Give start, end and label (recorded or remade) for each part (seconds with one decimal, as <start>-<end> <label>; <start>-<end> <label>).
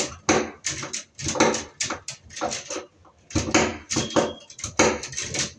0.0-5.6 recorded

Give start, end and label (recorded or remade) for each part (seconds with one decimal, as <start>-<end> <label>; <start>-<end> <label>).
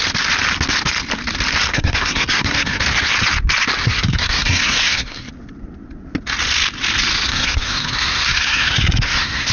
0.0-1.7 recorded; 1.7-2.8 remade; 2.8-3.8 recorded; 3.8-5.3 remade; 5.3-7.3 recorded; 7.3-9.5 remade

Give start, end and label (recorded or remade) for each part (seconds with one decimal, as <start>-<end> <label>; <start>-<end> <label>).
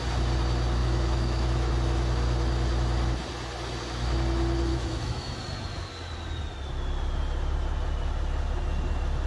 0.0-0.8 recorded; 0.8-1.7 remade; 1.7-4.7 recorded; 4.7-5.4 remade; 5.4-9.3 recorded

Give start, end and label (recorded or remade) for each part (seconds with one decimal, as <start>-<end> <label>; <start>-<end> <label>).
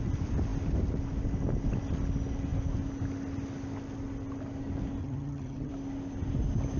0.0-5.0 recorded; 5.0-5.7 remade; 5.7-6.8 recorded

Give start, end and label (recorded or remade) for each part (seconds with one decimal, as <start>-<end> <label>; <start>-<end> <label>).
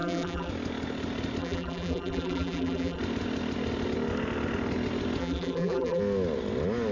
0.0-0.5 remade; 0.5-1.4 recorded; 1.4-3.0 remade; 3.0-5.2 recorded; 5.2-6.0 remade; 6.0-6.9 recorded